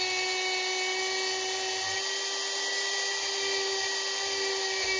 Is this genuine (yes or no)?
yes